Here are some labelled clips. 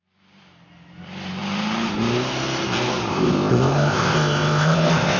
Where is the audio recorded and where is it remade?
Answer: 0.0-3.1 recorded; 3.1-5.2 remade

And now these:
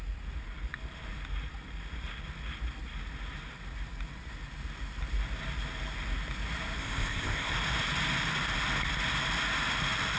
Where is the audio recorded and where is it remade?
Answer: 0.0-6.8 recorded; 6.8-7.5 remade; 7.5-10.2 recorded

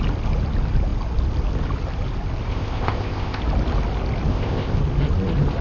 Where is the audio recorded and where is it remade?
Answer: 0.0-2.5 recorded; 2.5-3.4 remade; 3.4-4.3 recorded; 4.3-4.8 remade; 4.8-5.6 recorded

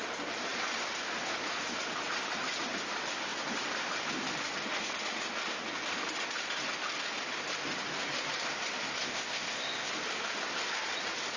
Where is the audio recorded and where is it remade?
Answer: 0.0-9.0 recorded; 9.0-9.9 remade; 9.9-11.4 recorded

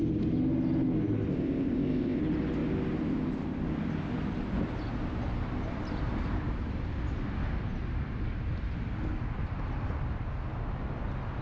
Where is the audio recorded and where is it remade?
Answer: 0.0-1.3 recorded; 1.3-2.2 remade; 2.2-11.4 recorded